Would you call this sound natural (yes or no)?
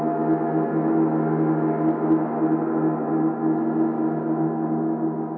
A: yes